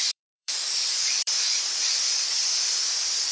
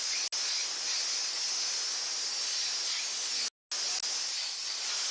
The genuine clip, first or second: second